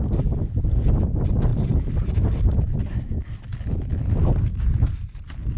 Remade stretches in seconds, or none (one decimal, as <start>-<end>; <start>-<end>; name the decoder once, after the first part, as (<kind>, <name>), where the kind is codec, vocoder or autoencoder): none